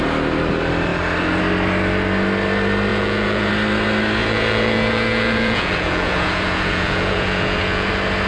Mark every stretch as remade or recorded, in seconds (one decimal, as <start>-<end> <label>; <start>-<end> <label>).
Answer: 0.0-2.9 recorded; 2.9-3.5 remade; 3.5-4.2 recorded; 4.2-7.9 remade; 7.9-8.3 recorded

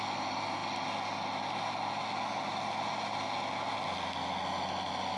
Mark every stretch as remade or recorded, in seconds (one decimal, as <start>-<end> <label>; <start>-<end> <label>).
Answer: 0.0-5.2 recorded

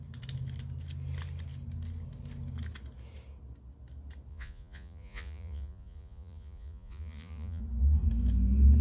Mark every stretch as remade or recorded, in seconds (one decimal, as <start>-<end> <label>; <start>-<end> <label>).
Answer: 0.0-4.3 recorded; 4.3-7.6 remade; 7.6-8.8 recorded